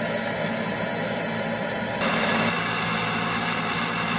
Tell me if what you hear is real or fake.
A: real